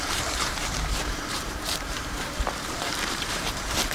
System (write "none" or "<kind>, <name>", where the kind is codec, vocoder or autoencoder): vocoder, BigVGAN v2